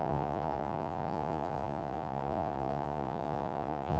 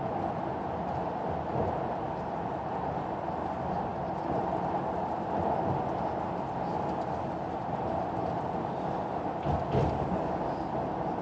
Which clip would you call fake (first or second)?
first